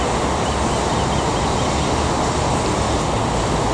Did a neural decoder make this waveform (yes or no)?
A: no